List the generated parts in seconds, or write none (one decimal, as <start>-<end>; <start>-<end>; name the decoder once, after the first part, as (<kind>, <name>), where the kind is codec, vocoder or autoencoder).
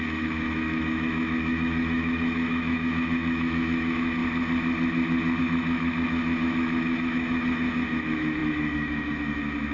0.0-4.2 (autoencoder, DAC-VAE); 5.4-9.7